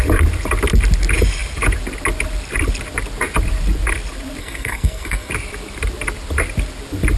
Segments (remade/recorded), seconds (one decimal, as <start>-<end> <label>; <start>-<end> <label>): 0.0-4.4 recorded; 4.4-5.3 remade; 5.3-7.2 recorded